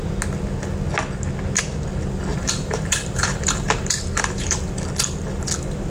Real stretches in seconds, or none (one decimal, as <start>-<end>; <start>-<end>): 0.0-2.3; 4.7-5.9